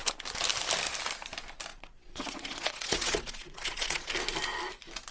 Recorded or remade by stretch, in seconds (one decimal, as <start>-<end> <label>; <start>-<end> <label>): 0.0-1.7 recorded; 1.7-4.1 remade; 4.1-5.1 recorded